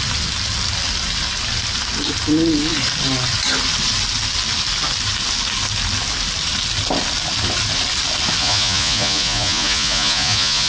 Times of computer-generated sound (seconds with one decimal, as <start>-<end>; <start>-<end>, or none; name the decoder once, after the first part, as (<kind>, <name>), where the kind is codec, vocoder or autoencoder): 8.4-10.7 (vocoder, Vocos)